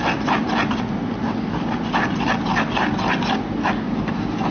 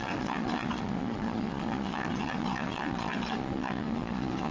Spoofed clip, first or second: second